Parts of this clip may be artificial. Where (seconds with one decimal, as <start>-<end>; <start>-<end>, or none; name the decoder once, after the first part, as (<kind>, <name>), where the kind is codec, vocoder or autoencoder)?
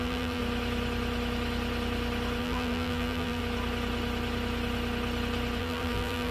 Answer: 0.0-0.4 (vocoder, BigVGAN v2); 2.4-3.4; 5.6-6.3